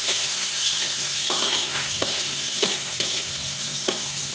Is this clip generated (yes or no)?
yes